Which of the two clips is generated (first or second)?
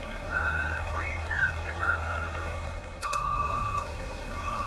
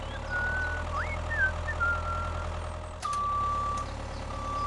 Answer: first